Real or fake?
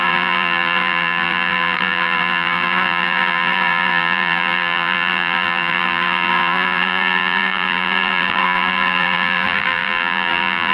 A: fake